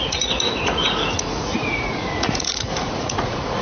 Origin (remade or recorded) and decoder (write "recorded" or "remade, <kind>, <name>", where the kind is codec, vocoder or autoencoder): remade, vocoder, Vocos